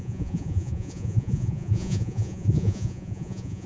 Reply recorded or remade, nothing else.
remade